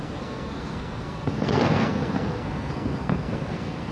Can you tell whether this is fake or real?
fake